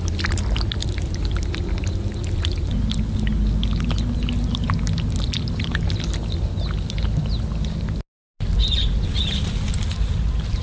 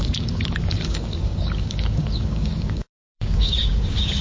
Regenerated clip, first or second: second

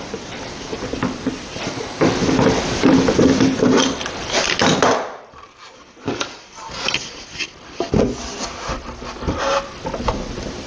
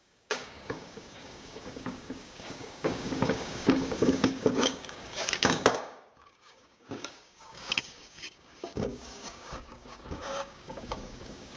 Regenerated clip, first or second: second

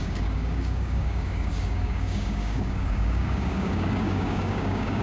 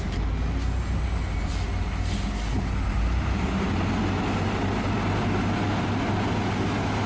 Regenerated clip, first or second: first